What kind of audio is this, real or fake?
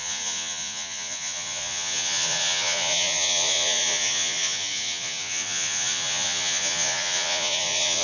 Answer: fake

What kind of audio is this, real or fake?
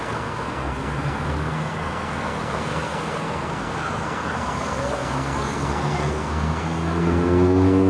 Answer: fake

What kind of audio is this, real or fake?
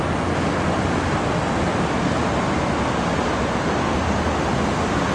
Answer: real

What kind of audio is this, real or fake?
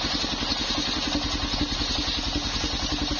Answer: real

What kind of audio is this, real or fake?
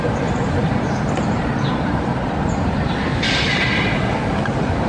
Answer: fake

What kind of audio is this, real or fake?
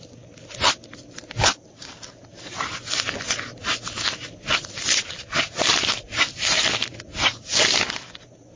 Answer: real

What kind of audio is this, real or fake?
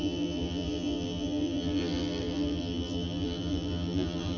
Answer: fake